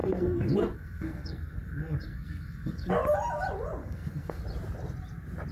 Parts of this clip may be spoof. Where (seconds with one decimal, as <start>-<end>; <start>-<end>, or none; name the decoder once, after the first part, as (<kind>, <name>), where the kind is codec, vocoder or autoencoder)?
0.0-2.9 (codec, SNAC); 3.8-4.4